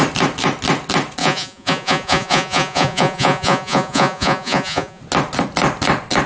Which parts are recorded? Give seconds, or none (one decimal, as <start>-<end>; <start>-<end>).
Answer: 0.0-1.2; 5.0-6.3